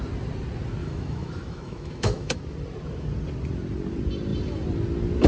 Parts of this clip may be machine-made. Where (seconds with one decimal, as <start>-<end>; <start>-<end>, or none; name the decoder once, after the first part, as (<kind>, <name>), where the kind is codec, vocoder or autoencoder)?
0.8-2.4 (autoencoder, DAC-VAE)